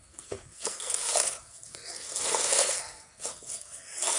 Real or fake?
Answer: fake